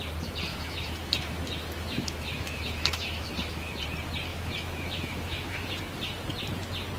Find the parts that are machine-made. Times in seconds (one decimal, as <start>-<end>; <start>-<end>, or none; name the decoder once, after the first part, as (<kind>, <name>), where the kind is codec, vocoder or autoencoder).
0.5-3.8 (autoencoder, DAC-VAE); 4.3-5.8